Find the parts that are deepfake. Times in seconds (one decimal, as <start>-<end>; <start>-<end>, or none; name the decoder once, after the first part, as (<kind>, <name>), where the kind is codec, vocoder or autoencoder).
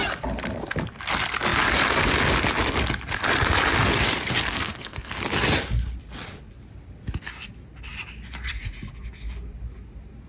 4.5-5.1 (codec, SNAC)